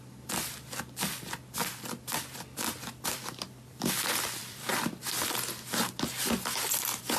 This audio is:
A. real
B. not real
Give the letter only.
B